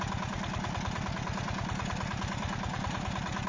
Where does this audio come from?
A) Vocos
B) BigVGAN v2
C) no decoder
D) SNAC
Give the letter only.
B